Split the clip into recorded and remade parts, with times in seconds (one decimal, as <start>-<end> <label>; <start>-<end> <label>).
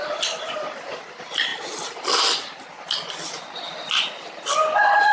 0.0-5.1 recorded